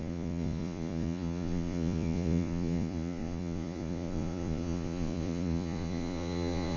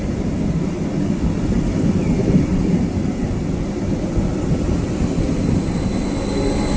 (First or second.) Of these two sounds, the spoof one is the first